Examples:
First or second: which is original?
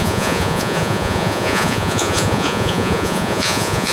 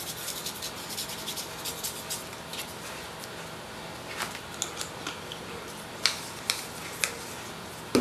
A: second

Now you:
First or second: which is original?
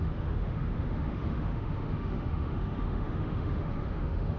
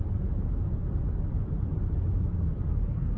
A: second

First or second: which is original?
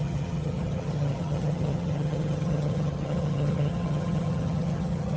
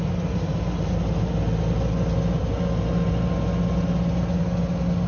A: second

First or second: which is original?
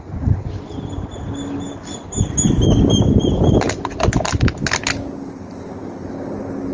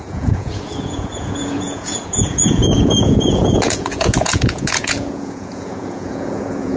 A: first